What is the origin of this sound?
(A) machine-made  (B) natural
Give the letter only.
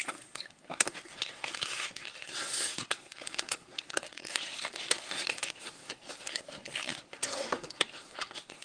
A